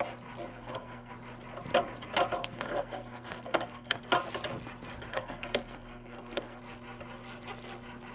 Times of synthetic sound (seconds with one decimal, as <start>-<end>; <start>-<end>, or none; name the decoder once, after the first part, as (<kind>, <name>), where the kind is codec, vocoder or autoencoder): 0.5-1.1 (codec, SNAC); 2.4-4.0; 5.1-6.6